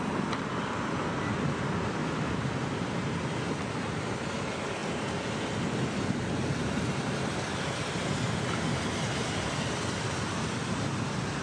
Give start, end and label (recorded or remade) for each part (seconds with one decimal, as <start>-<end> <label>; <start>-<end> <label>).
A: 0.0-2.0 recorded; 2.0-2.5 remade; 2.5-11.4 recorded